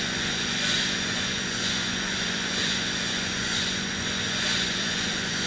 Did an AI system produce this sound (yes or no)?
yes